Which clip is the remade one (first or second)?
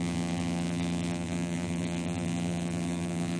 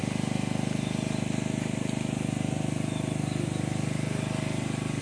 first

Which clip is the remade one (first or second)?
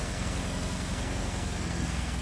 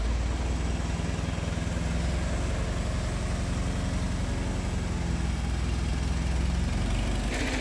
first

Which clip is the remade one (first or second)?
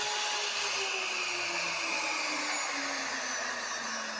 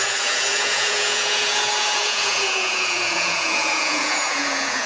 second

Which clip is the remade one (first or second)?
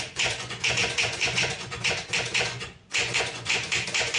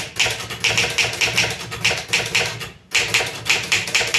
first